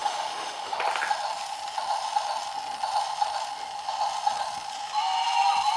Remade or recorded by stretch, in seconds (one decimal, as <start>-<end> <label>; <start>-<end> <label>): 0.0-0.8 remade; 0.8-5.8 recorded